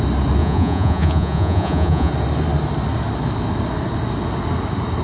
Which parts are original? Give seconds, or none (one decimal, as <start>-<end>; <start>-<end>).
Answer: 0.0-0.4; 2.1-5.0